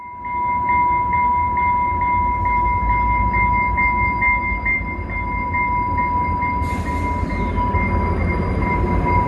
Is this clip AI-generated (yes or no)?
no